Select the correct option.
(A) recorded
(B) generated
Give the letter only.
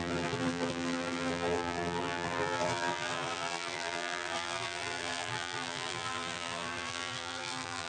B